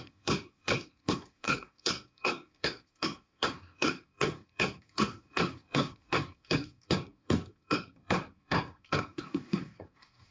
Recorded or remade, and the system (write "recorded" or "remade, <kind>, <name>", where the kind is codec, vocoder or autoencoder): remade, codec, SNAC